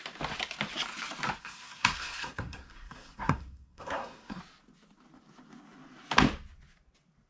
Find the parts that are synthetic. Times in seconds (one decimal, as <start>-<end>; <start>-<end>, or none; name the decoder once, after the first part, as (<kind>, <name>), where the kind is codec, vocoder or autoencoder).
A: 1.4-4.4 (codec, SNAC)

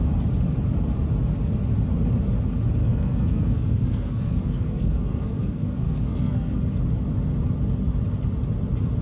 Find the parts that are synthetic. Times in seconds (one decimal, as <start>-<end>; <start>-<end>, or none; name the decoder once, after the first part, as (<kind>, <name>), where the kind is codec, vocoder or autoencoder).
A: 2.8-6.6 (codec, SNAC)

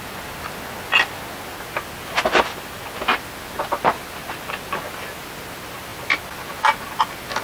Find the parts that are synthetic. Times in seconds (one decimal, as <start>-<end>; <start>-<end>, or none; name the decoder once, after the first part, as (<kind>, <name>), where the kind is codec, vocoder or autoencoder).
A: none

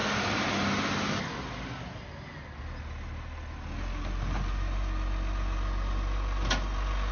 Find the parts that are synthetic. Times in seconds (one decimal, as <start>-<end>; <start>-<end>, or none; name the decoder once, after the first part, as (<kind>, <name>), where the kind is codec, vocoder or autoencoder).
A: none